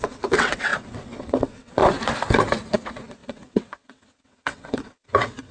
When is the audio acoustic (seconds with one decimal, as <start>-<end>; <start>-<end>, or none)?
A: 1.8-2.7